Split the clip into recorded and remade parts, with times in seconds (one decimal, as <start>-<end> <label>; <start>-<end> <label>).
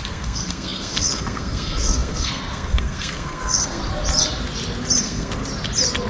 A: 0.0-3.8 remade; 3.8-5.0 recorded; 5.0-5.4 remade; 5.4-6.1 recorded